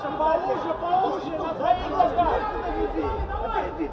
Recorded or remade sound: recorded